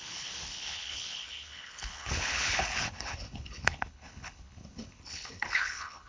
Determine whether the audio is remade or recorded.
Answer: remade